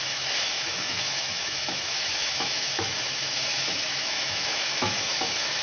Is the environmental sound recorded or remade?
remade